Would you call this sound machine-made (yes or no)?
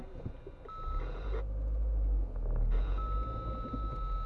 no